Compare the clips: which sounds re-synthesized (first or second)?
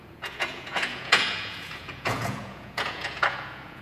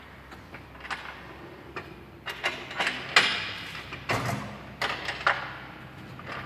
first